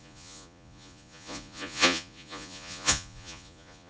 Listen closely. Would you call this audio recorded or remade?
remade